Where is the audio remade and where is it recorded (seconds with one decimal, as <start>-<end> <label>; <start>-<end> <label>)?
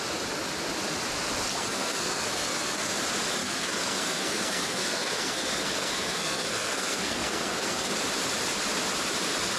0.0-1.5 recorded; 1.5-3.0 remade; 3.0-3.4 recorded; 3.4-7.9 remade; 7.9-9.6 recorded